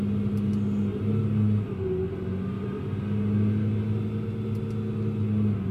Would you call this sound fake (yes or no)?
no